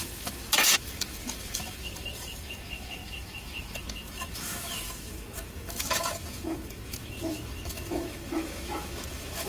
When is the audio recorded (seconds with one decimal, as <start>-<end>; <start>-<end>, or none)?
none